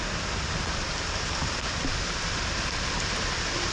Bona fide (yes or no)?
yes